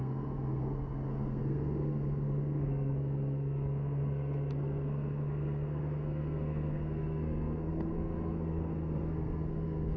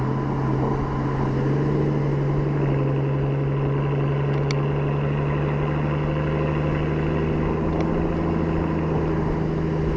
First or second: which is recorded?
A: second